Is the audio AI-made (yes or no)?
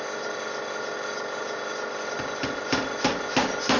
no